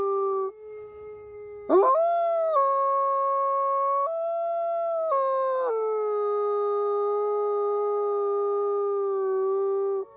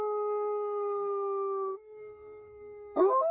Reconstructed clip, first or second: second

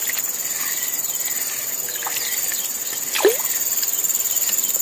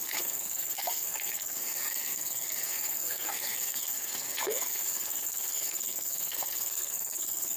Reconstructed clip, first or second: second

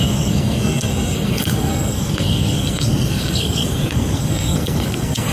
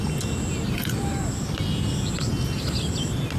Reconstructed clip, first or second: first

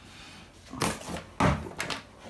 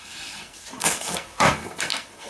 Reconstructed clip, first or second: second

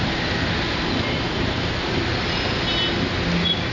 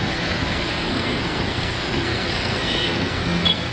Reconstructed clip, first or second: second